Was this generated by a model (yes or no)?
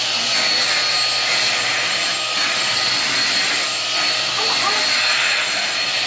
no